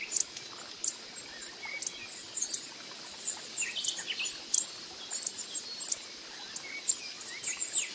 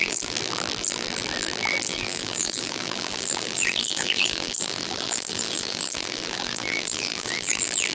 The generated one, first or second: second